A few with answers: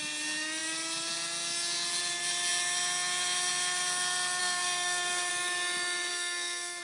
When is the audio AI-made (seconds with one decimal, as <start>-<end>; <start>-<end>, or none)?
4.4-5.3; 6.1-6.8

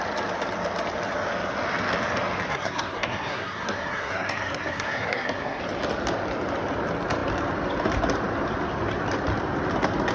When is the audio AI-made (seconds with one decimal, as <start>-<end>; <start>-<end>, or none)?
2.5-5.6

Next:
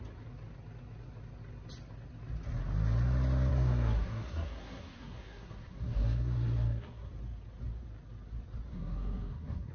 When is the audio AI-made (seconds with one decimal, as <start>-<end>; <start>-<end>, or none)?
3.5-7.1; 8.7-9.7

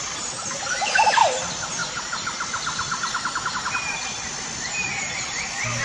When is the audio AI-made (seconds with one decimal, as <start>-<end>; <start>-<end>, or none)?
none